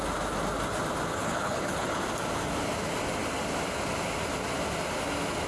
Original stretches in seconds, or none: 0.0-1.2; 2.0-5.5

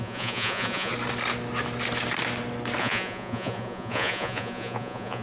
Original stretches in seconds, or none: 0.9-2.8